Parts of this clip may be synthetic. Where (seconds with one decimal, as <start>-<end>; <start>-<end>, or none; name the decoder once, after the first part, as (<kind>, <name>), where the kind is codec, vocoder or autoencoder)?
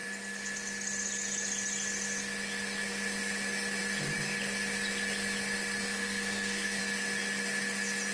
5.8-6.8 (codec, SNAC)